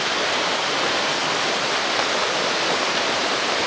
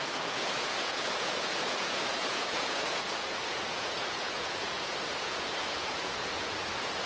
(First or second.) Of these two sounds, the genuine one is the first